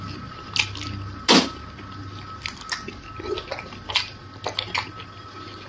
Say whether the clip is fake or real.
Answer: real